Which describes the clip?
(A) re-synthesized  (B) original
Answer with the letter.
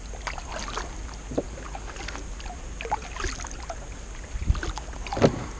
B